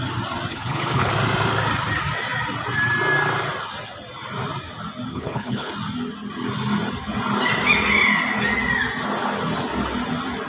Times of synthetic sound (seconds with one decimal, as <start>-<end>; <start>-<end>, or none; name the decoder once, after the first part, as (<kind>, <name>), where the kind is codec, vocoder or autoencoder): 0.5-1.1 (codec, HILCodec); 5.1-5.7